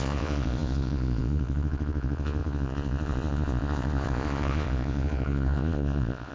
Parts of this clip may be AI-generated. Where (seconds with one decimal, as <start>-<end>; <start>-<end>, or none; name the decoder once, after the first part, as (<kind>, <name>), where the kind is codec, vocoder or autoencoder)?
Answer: 0.0-6.3 (vocoder, Vocos)